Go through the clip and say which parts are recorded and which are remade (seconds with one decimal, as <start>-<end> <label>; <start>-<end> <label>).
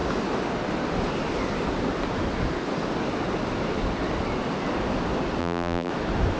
0.0-5.4 recorded; 5.4-5.9 remade; 5.9-6.4 recorded